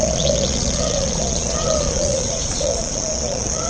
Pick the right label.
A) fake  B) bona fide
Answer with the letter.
A